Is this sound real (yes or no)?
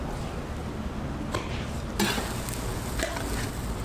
yes